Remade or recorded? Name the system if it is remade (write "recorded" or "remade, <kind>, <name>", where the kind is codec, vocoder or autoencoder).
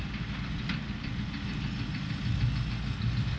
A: recorded